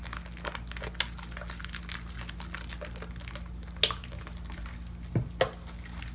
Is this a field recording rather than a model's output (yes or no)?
yes